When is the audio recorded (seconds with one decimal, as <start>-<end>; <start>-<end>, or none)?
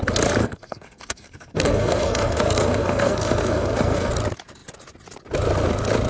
0.0-0.4; 4.1-6.1